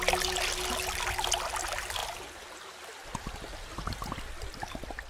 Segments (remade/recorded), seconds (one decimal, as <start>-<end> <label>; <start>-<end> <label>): 0.0-5.1 recorded